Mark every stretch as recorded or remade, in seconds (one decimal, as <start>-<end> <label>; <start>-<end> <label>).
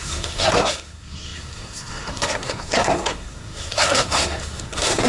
0.0-5.1 remade